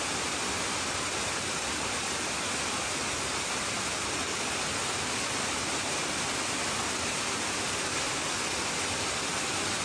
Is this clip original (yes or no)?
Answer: yes